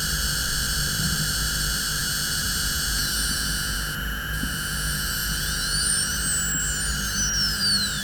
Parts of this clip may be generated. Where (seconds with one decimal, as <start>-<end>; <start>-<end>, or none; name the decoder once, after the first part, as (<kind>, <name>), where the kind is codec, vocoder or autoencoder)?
2.0-6.1 (vocoder, Vocos)

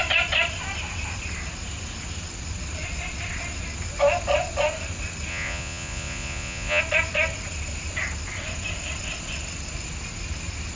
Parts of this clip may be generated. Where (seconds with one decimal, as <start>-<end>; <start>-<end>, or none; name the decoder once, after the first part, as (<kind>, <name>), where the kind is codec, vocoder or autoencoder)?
5.3-6.8 (vocoder, Vocos)

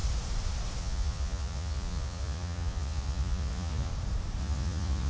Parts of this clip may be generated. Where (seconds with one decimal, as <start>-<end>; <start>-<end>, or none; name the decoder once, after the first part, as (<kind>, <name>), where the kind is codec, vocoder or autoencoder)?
0.8-3.9 (vocoder, Vocos); 4.4-5.1